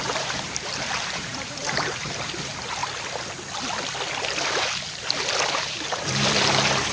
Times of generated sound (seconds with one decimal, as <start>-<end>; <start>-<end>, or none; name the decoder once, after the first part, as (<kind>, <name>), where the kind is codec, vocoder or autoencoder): 0.0-2.8 (vocoder, BigVGAN v2); 5.5-6.9